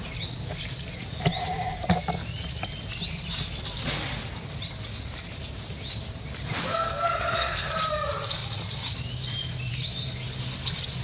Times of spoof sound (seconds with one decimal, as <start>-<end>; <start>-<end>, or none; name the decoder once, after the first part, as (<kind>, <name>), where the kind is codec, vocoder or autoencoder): 6.7-7.7 (codec, SNAC)